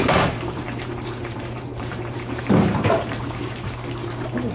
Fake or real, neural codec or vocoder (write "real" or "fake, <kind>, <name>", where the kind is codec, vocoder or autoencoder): fake, vocoder, BigVGAN v2